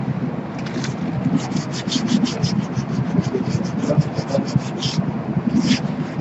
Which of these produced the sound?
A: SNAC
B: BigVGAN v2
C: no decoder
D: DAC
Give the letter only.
C